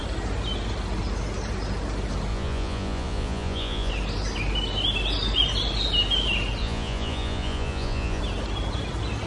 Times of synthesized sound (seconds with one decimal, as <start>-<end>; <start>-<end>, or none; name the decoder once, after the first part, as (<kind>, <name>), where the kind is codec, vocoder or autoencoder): 2.3-3.9 (vocoder, Vocos); 6.6-8.2

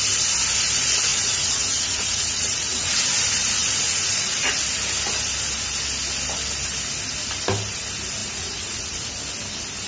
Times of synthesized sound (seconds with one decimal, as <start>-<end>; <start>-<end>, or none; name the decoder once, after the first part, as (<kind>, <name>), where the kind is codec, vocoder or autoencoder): 1.1-2.9 (vocoder, Vocos); 3.6-4.5; 8.2-9.1

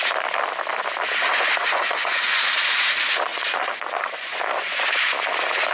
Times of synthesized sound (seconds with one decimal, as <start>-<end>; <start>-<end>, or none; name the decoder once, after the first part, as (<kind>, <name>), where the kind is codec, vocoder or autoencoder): 1.3-2.4 (vocoder, Vocos); 3.3-4.9

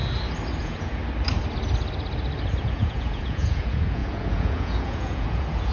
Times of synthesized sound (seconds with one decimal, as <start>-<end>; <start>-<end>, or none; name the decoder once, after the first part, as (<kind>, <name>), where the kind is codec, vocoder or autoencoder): 0.6-1.0 (vocoder, Vocos); 2.6-5.7